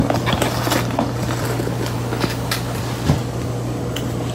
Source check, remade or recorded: recorded